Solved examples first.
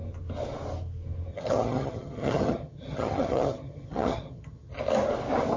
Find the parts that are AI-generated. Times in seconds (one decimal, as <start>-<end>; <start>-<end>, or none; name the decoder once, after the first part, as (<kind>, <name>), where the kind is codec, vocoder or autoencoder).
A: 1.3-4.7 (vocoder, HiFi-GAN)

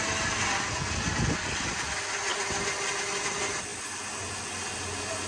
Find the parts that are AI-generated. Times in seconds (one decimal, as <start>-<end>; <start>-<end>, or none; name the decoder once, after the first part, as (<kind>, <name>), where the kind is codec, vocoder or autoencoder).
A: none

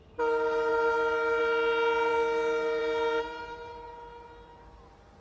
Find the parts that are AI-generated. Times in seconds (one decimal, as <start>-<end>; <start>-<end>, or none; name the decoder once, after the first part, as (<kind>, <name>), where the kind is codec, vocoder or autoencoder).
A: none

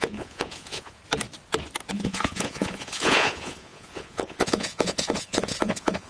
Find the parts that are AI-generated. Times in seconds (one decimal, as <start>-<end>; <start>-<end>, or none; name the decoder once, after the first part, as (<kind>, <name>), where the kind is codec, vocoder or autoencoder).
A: 0.0-1.0 (vocoder, Vocos); 1.9-6.1

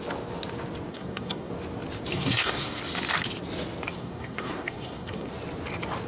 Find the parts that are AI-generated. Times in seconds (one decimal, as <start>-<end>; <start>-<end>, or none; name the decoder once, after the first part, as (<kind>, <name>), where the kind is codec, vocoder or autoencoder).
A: 0.9-1.5 (codec, SNAC); 2.1-2.8; 4.0-5.3

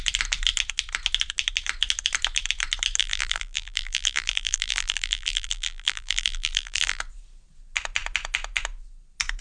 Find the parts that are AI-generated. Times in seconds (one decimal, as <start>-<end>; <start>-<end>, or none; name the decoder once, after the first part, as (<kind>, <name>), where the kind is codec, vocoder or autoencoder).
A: 3.0-7.0 (vocoder, BigVGAN v2)